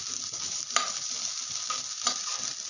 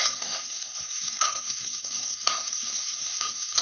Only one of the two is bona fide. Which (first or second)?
first